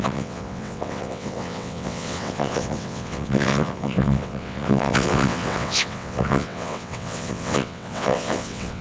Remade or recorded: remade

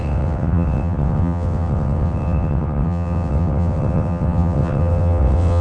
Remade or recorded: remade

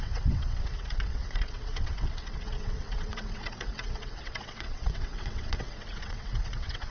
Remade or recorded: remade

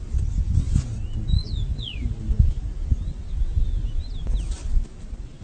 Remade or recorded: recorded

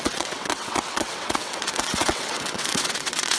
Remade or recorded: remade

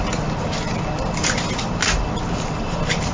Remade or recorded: recorded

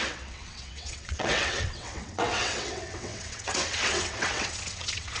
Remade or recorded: remade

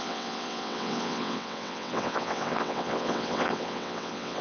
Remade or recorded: remade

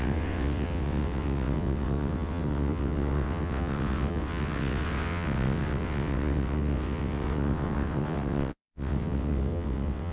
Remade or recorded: remade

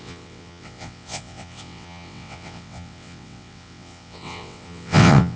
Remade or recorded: remade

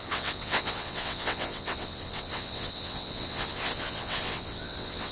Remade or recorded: remade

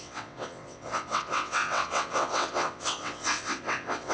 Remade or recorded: remade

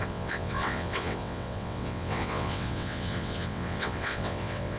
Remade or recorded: remade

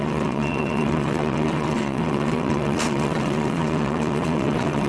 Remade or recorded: remade